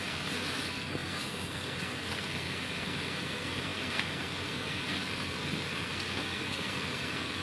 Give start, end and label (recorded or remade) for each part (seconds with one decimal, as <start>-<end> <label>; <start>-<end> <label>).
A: 0.0-7.4 remade